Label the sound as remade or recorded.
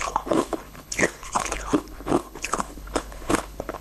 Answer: remade